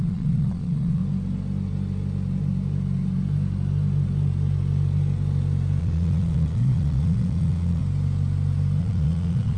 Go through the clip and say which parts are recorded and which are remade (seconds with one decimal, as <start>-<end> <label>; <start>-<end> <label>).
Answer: 0.0-1.0 remade; 1.0-5.8 recorded; 5.8-7.8 remade; 7.8-8.8 recorded; 8.8-9.6 remade